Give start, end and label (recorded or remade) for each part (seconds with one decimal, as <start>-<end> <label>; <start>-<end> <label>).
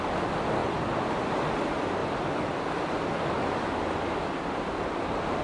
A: 0.0-5.4 recorded